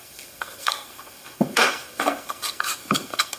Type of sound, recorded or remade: remade